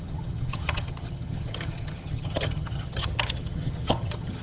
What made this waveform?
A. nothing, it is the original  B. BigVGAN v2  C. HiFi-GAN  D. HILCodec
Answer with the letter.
C